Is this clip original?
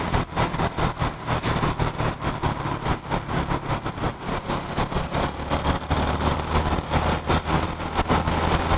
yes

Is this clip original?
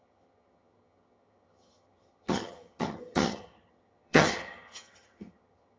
no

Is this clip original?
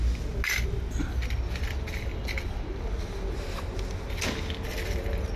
yes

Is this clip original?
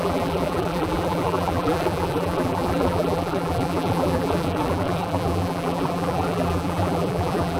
no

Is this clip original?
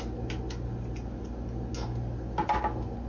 yes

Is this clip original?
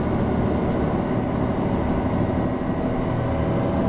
yes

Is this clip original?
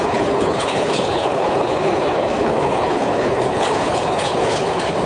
no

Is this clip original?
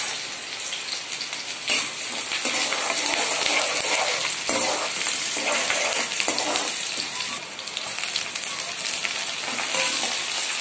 yes